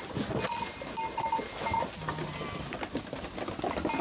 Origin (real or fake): real